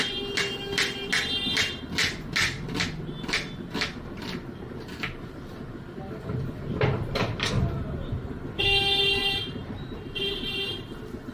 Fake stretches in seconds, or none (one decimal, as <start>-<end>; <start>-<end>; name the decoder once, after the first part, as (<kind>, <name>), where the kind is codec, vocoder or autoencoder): 9.2-10.8 (vocoder, BigVGAN v2)